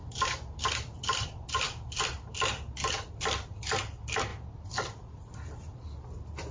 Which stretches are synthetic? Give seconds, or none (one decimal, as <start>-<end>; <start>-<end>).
none